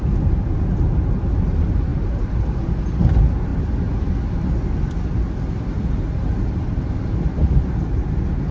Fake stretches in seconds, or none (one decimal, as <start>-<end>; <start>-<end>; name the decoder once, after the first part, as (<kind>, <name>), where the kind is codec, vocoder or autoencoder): 1.9-2.4 (vocoder, BigVGAN v2)